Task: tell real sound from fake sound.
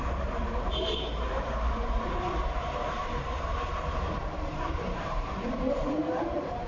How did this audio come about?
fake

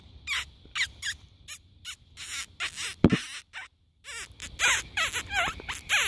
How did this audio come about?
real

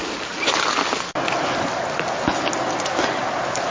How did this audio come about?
real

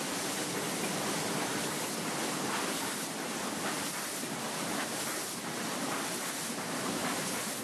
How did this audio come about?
real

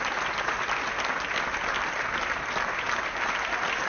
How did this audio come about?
real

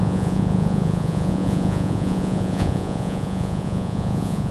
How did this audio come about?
fake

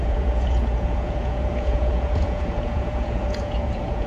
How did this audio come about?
fake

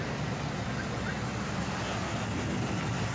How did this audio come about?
real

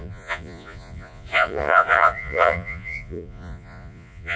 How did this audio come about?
fake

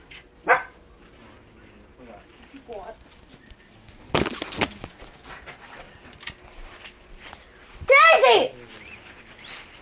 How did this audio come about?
real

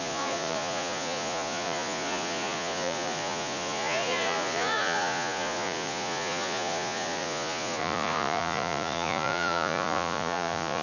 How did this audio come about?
fake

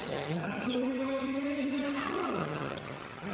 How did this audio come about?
fake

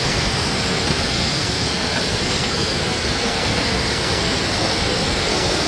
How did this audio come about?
fake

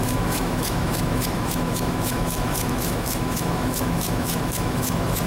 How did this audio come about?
fake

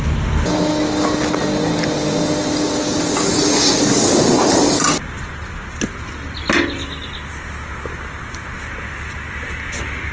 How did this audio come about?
real